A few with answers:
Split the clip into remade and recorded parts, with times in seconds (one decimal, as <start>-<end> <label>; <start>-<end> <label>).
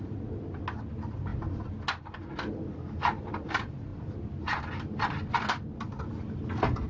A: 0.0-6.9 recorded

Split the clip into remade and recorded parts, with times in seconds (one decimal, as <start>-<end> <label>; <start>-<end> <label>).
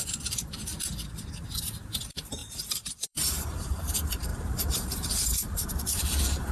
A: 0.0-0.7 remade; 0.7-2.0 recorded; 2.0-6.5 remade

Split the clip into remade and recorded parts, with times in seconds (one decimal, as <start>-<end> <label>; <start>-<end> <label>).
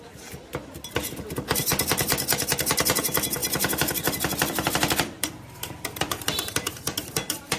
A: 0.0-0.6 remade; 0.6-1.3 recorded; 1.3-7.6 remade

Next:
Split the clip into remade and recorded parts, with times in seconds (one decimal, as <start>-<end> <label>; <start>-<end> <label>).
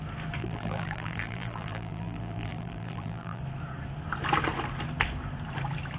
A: 0.0-0.4 recorded; 0.4-3.4 remade; 3.4-6.0 recorded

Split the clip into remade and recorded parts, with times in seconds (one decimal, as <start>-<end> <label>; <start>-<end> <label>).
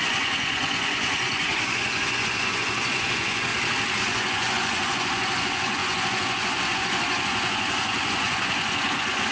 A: 0.0-3.5 remade; 3.5-4.0 recorded; 4.0-9.3 remade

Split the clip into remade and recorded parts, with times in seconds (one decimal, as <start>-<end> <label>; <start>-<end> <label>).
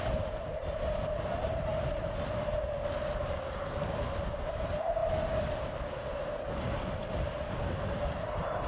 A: 0.0-8.7 recorded